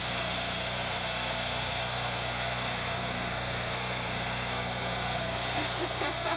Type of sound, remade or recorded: remade